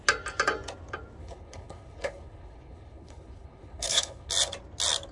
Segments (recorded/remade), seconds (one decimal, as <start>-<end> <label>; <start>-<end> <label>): 0.0-1.2 recorded; 1.2-4.3 remade; 4.3-5.1 recorded